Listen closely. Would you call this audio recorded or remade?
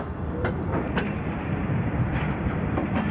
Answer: remade